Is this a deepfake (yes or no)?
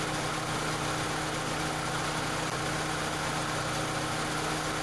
no